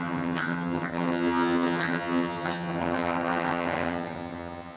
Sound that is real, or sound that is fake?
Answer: fake